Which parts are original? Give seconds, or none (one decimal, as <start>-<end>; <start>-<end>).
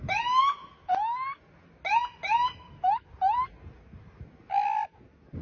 0.0-5.4